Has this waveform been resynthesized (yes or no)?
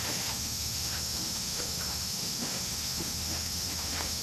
yes